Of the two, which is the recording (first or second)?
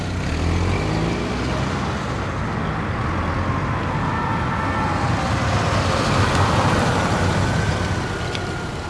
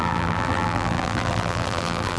first